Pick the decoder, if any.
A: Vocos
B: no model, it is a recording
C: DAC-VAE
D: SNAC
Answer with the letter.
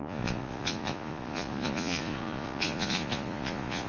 A